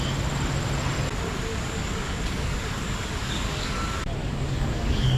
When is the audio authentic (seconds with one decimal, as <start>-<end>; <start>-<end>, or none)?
0.0-1.5; 3.8-4.2